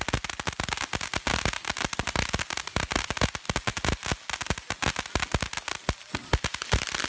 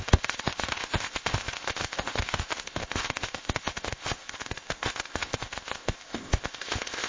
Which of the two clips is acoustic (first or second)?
first